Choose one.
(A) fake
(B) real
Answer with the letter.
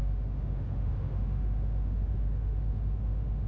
A